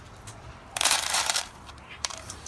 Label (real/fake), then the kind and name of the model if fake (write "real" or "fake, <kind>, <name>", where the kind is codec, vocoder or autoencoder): fake, vocoder, BigVGAN v2